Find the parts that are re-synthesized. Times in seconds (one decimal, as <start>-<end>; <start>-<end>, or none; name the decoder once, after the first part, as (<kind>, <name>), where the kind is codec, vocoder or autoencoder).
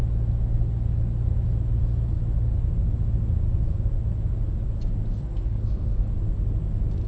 5.1-6.1 (codec, SNAC)